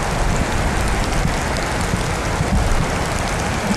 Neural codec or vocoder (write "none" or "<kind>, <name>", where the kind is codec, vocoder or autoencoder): none